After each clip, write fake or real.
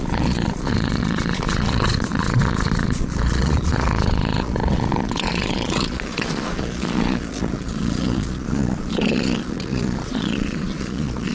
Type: fake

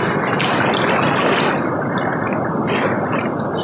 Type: real